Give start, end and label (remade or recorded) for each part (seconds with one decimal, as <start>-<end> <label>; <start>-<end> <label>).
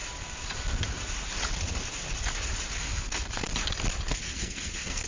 0.0-2.8 recorded; 2.8-3.5 remade; 3.5-4.2 recorded; 4.2-5.1 remade